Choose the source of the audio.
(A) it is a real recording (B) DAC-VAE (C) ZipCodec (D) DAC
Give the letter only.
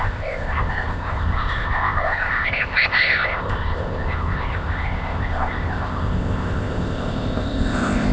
C